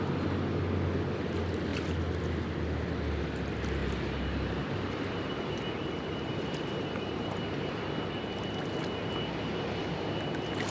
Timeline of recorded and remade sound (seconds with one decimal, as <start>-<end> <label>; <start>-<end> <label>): 0.0-3.8 recorded; 3.8-8.1 remade; 8.1-10.7 recorded